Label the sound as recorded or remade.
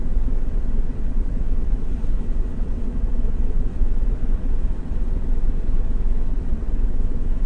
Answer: remade